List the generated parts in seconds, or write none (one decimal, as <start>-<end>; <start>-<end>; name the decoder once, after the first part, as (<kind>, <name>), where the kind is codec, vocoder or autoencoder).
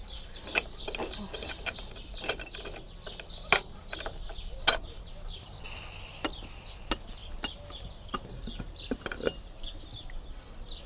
none